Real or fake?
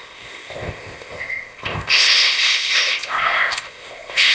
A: fake